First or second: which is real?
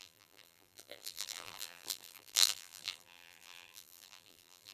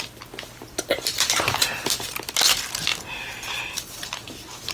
second